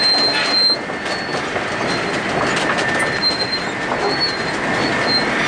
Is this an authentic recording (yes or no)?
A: yes